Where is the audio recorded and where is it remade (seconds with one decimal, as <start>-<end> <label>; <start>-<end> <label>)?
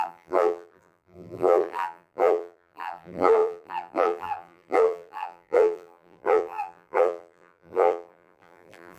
0.0-9.0 remade